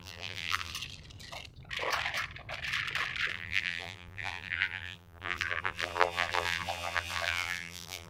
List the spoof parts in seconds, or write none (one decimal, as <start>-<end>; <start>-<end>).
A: 0.0-0.7; 3.3-8.1